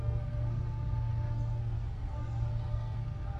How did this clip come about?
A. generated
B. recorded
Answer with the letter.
A